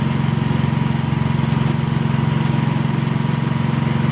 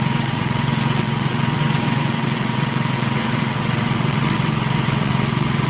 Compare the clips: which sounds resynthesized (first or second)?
second